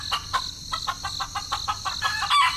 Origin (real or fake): real